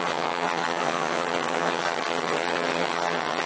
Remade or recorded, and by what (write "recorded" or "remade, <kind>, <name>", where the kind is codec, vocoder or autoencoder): remade, vocoder, HiFi-GAN